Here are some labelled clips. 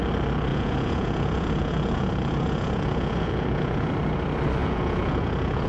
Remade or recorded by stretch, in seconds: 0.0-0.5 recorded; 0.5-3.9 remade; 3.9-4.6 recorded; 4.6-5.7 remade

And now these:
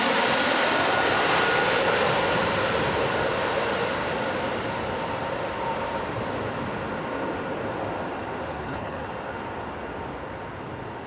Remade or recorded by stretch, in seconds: 0.0-8.5 recorded; 8.5-9.1 remade; 9.1-11.1 recorded

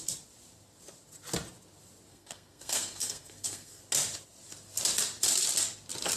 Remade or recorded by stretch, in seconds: 0.0-2.1 recorded; 2.1-3.8 remade; 3.8-6.2 recorded

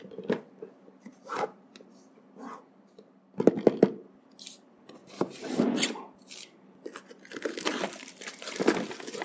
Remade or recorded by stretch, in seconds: 0.0-1.1 recorded; 1.1-1.7 remade; 1.7-5.0 recorded; 5.0-6.0 remade; 6.0-7.7 recorded; 7.7-8.6 remade; 8.6-9.2 recorded